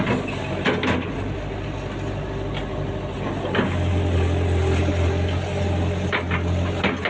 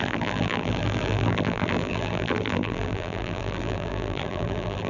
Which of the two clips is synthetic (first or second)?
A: second